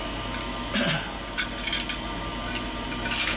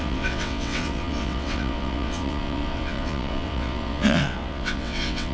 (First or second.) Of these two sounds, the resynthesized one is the second